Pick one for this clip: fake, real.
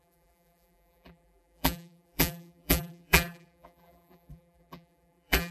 fake